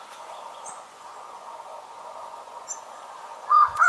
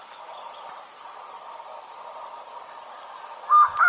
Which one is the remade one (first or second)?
first